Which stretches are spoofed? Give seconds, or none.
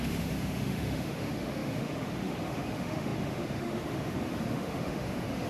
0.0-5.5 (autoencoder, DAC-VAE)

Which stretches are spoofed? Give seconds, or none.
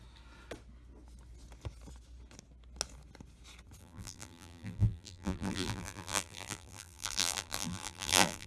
3.8-8.5 (vocoder, BigVGAN v2)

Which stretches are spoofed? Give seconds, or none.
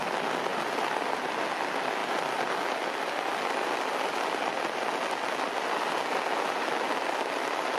none